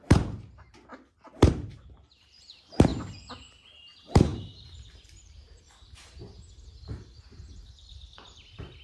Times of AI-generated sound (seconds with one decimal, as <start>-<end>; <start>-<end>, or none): 0.0-0.9; 1.5-2.9; 3.7-8.8

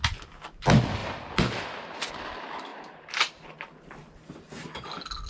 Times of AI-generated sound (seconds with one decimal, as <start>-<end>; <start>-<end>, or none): 2.7-3.6

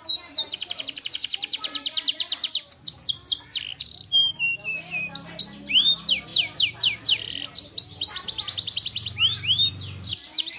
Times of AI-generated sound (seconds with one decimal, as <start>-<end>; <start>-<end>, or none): none

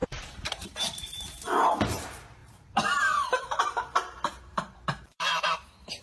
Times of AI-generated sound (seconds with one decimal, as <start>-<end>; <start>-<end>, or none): 0.0-0.8; 2.4-6.0